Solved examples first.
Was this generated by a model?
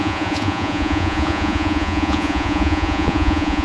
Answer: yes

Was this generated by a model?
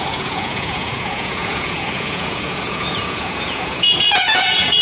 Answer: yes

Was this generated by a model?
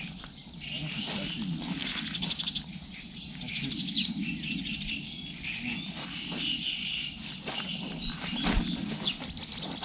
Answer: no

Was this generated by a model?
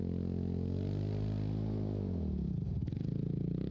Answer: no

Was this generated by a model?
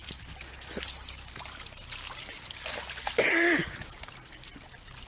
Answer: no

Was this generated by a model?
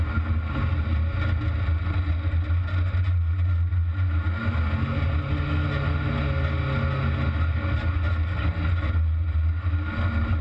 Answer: no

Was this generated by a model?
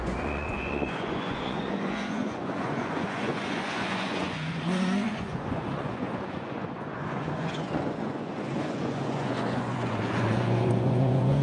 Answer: yes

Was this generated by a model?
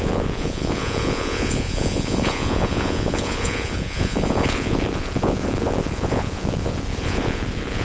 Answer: yes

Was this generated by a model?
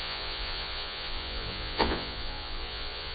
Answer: yes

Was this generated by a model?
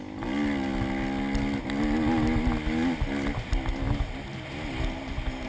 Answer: no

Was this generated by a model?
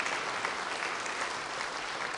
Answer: no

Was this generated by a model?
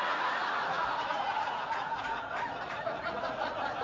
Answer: yes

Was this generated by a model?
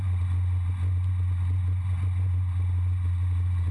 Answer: no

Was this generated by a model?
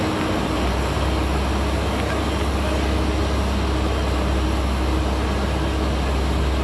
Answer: no